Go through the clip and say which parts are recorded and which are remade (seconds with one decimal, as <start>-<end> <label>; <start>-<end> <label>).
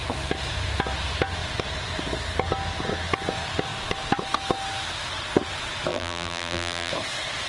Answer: 0.0-5.9 recorded; 5.9-6.9 remade; 6.9-7.5 recorded